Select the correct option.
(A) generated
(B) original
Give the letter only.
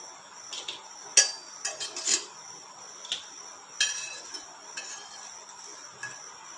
B